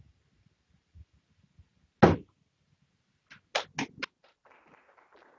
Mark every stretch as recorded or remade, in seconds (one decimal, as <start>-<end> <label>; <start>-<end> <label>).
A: 0.0-1.7 remade; 1.7-4.2 recorded; 4.2-5.4 remade